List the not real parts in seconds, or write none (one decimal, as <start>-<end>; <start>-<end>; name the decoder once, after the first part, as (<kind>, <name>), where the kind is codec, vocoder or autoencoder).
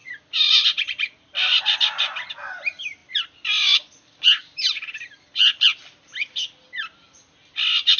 none